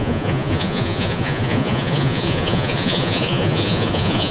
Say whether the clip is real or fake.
fake